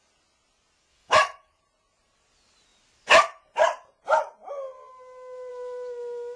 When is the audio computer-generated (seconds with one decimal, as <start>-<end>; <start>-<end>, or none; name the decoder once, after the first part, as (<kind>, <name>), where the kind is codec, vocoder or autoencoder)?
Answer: 0.9-1.6 (autoencoder, DAC-VAE)